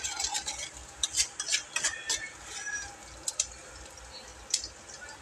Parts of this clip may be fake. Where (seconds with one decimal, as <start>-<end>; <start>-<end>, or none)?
none

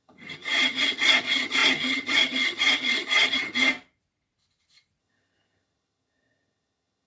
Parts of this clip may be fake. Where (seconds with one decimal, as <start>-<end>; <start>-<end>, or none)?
0.0-3.7; 5.0-7.1

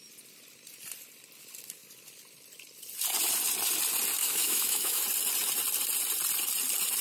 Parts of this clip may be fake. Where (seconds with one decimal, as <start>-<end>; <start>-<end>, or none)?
4.2-5.0

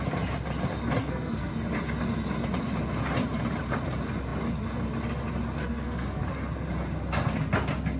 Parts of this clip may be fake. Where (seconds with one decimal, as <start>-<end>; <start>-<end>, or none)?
1.0-1.5; 5.6-6.2

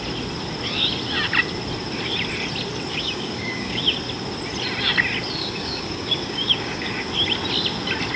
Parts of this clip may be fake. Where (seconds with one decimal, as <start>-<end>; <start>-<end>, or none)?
2.9-3.8; 5.4-6.9

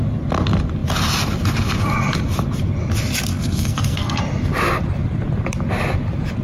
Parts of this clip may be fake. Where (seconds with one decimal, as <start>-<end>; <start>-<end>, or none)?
3.3-4.2

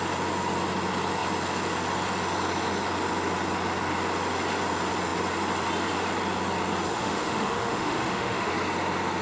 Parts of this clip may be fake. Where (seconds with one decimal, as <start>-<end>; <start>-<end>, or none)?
6.9-8.5

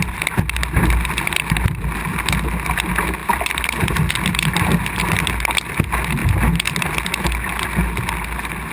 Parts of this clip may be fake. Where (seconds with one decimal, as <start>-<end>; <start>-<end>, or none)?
3.2-4.1